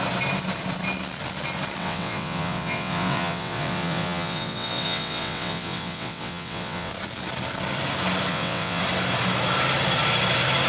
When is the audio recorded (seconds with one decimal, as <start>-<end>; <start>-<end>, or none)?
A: 0.0-1.8; 6.9-8.3; 8.8-10.7